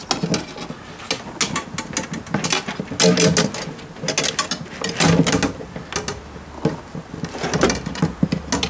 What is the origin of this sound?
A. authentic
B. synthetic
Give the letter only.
A